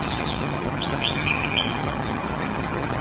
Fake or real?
fake